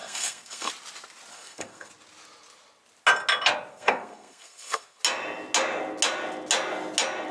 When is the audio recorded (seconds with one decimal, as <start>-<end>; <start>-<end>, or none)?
0.7-1.3; 1.9-3.7; 5.0-7.3